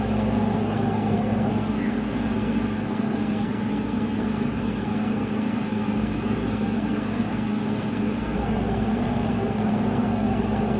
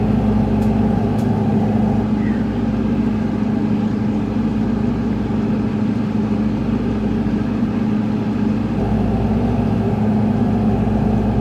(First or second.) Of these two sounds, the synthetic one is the first